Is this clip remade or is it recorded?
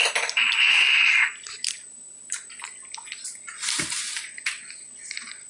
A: recorded